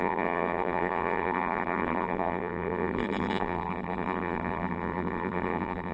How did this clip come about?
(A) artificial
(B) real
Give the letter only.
A